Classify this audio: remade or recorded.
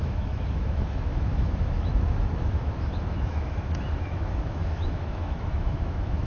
remade